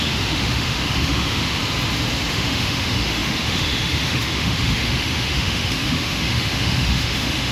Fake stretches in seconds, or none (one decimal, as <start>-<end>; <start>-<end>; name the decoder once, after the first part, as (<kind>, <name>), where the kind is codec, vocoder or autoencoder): 0.0-1.6 (autoencoder, DAC-VAE); 2.3-7.5